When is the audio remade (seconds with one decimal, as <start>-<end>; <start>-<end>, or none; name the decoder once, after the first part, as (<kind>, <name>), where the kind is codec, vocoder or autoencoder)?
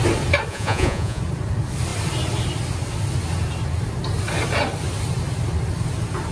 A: 0.5-1.2 (vocoder, Vocos)